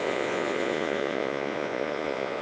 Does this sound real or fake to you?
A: fake